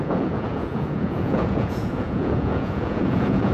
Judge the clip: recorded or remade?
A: remade